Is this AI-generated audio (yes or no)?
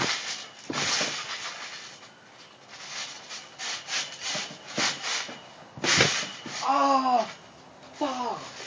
no